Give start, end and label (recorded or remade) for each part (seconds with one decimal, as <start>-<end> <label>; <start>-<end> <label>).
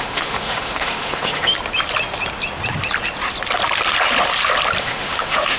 0.0-1.5 remade; 1.5-4.8 recorded; 4.8-5.6 remade